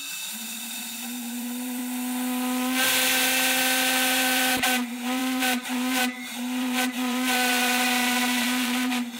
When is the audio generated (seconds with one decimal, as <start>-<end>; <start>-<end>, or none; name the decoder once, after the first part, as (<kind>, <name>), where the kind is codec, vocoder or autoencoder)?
0.0-1.8 (vocoder, BigVGAN v2); 2.9-9.2